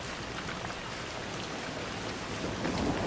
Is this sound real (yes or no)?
yes